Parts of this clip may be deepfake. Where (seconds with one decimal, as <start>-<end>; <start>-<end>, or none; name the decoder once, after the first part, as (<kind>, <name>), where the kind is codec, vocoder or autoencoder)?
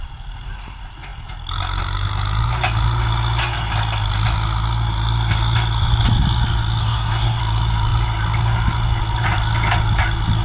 6.8-7.4 (codec, SNAC)